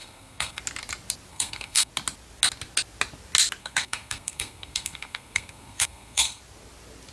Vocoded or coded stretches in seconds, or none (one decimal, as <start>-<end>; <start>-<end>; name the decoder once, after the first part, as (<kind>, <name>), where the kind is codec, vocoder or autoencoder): 0.0-0.6 (codec, SNAC); 1.3-1.9; 3.6-6.4